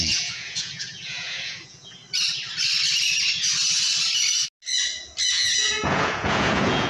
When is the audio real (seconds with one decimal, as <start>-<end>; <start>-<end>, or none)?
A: 2.0-5.3